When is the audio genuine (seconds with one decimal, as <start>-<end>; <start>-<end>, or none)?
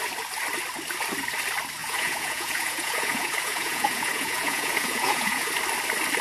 0.0-1.8; 5.5-6.2